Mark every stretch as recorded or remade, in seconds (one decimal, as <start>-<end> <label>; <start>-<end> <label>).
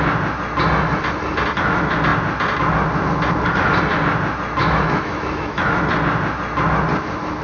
0.0-4.6 recorded; 4.6-5.7 remade; 5.7-7.4 recorded